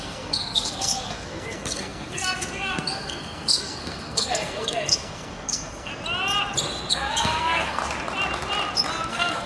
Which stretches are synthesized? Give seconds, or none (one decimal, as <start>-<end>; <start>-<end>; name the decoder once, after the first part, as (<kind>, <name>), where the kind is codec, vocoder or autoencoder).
0.0-5.9 (codec, SNAC); 6.9-7.8; 9.1-9.5